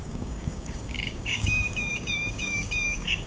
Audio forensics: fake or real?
fake